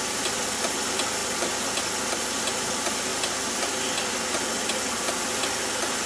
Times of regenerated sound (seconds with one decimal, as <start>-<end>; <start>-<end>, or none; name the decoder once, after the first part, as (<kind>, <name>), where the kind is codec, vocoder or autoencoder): none